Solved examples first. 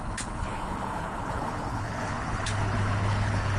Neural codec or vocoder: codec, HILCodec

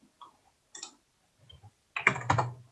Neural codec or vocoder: none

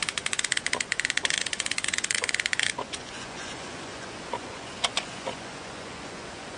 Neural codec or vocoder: vocoder, Vocos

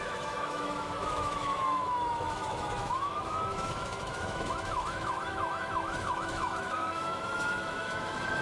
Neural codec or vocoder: autoencoder, DAC-VAE